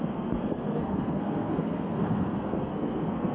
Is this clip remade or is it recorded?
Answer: remade